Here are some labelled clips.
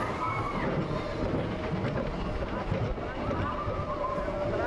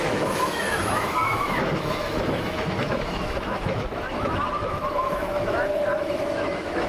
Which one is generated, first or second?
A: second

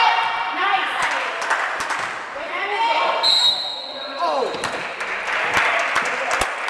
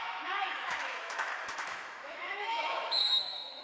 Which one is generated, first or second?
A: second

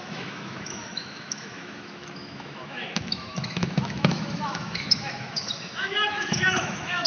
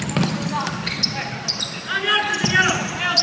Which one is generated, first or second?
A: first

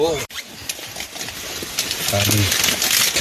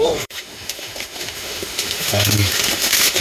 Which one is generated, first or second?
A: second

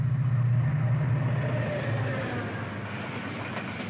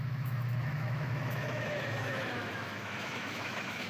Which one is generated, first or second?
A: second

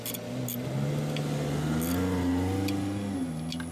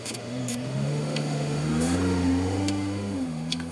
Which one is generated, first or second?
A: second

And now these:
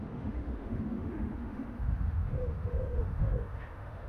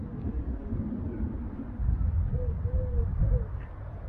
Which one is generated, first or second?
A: first